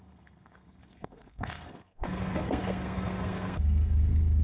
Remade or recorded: remade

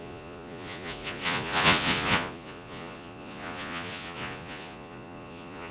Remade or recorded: remade